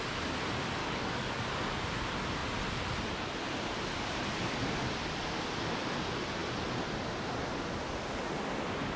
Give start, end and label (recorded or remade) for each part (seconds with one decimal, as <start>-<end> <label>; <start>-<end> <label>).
0.0-0.8 recorded; 0.8-1.4 remade; 1.4-9.0 recorded